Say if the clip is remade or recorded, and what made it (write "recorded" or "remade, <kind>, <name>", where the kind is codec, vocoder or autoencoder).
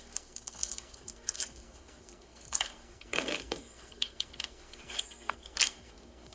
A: remade, codec, SNAC